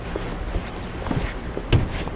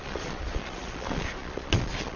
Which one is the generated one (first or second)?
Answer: second